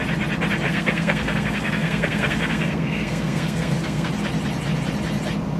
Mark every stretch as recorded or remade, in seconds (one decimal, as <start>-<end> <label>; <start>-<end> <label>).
0.0-0.7 recorded; 0.7-4.1 remade; 4.1-5.6 recorded